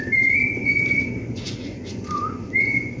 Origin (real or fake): fake